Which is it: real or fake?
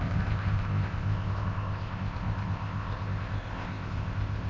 fake